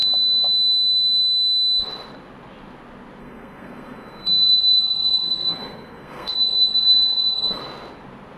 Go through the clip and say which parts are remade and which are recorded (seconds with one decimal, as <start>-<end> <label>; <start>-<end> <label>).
0.0-3.2 recorded; 3.2-7.6 remade; 7.6-8.4 recorded